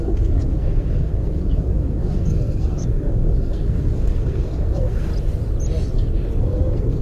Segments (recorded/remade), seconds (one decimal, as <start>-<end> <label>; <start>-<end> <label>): 0.0-5.1 remade; 5.1-6.4 recorded; 6.4-7.0 remade